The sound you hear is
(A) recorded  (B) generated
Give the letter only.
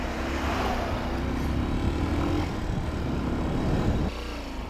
A